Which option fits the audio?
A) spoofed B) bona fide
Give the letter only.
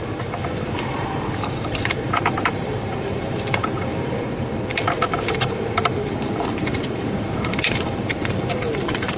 A